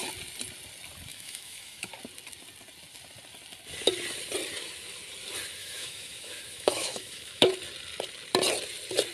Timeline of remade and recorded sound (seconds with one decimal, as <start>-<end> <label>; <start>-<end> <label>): 0.0-1.1 recorded; 1.1-1.9 remade; 1.9-5.6 recorded; 5.6-7.5 remade; 7.5-9.1 recorded